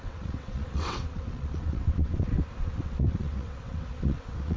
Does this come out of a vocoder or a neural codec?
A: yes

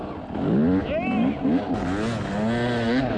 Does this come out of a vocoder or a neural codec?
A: no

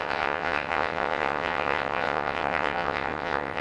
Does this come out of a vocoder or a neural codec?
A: yes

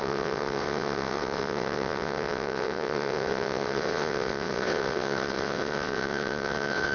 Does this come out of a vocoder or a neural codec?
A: yes